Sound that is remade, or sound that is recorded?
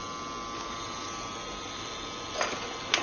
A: recorded